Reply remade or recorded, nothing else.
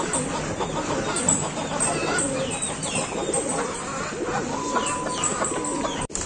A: recorded